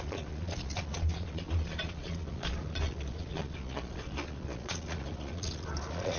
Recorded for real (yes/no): no